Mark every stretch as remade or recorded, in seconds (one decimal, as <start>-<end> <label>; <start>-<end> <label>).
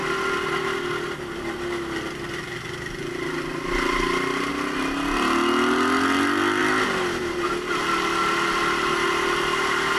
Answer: 0.0-10.0 recorded